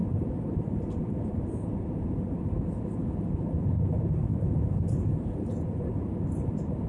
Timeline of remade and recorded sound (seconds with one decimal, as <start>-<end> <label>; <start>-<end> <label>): 0.0-6.9 remade